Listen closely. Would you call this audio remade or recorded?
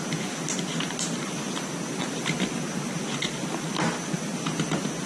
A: recorded